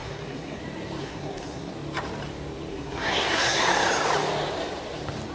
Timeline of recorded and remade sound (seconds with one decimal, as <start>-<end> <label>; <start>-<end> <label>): 0.0-0.6 remade; 0.6-1.0 recorded; 1.0-1.7 remade; 1.7-2.7 recorded; 2.7-3.6 remade; 3.6-5.3 recorded